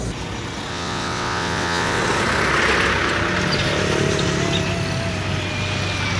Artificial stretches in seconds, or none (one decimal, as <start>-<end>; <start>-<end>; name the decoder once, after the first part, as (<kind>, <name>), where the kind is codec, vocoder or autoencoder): 0.7-2.0 (vocoder, WaveNeXt)